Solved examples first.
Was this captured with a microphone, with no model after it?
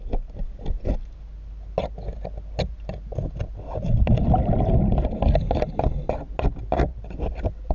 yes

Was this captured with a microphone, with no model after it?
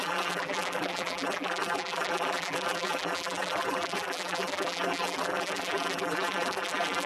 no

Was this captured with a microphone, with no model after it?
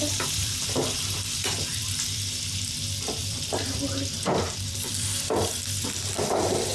no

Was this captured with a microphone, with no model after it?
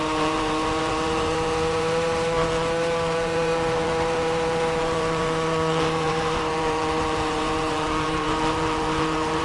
no